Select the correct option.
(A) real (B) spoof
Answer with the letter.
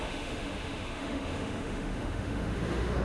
B